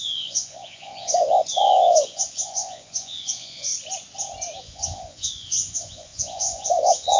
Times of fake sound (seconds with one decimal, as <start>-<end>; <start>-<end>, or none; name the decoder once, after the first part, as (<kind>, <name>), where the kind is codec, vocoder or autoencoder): 0.0-3.7 (vocoder, Vocos); 4.6-7.2